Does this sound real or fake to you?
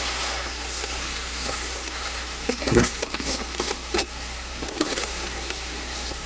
fake